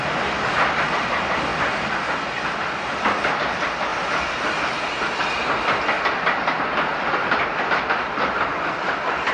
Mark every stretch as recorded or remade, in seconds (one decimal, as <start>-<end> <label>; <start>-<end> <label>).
0.0-1.5 remade; 1.5-2.4 recorded; 2.4-3.9 remade; 3.9-7.5 recorded; 7.5-9.3 remade